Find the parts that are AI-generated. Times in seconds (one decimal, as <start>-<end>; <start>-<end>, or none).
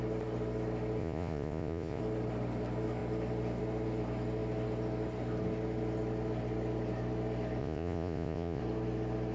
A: 1.0-2.0; 7.6-8.6